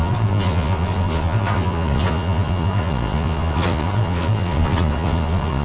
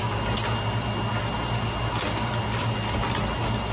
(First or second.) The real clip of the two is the second